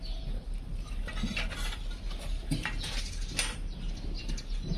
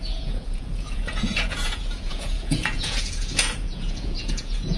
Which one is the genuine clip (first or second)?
first